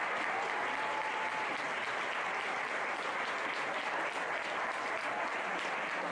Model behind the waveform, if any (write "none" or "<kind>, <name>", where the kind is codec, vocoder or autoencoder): none